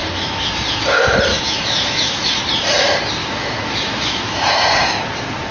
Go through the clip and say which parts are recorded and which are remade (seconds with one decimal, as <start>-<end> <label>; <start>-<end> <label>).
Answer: 0.0-0.5 remade; 0.5-1.3 recorded; 1.3-2.4 remade; 2.4-3.2 recorded; 3.2-4.5 remade; 4.5-5.5 recorded

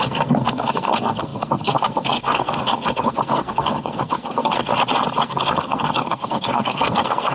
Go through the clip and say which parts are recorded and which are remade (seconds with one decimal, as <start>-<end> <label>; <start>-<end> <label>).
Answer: 0.0-4.7 remade; 4.7-5.2 recorded; 5.2-7.3 remade

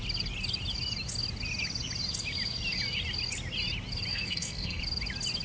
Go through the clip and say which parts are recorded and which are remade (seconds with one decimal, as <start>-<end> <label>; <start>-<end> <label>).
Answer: 0.0-4.1 recorded; 4.1-4.8 remade; 4.8-5.4 recorded

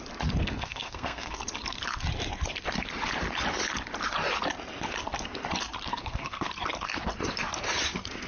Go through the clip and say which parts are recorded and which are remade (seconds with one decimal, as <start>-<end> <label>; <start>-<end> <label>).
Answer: 0.0-0.4 recorded; 0.4-1.4 remade; 1.4-5.9 recorded; 5.9-6.5 remade; 6.5-8.3 recorded

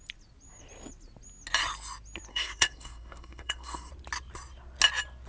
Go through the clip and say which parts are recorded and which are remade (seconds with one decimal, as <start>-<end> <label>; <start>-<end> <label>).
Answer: 0.0-2.3 recorded; 2.3-3.9 remade; 3.9-5.3 recorded

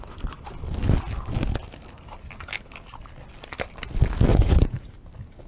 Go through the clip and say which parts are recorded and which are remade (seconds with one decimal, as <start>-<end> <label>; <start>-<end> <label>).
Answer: 0.0-4.3 recorded; 4.3-4.9 remade; 4.9-5.5 recorded

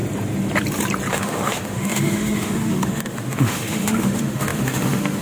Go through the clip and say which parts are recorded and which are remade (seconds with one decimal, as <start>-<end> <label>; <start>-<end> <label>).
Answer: 0.0-1.1 recorded; 1.1-5.2 remade

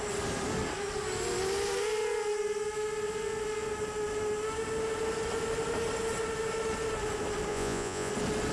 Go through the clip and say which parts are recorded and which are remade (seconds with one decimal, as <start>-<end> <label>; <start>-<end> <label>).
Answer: 0.0-7.5 recorded; 7.5-8.1 remade; 8.1-8.5 recorded